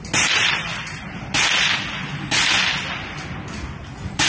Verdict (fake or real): real